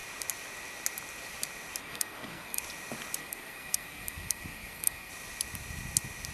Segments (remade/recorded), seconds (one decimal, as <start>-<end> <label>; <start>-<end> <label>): 0.0-1.8 recorded; 1.8-2.6 remade; 2.6-3.2 recorded; 3.2-5.1 remade; 5.1-6.3 recorded